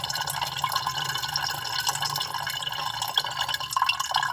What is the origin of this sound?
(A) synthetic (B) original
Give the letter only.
B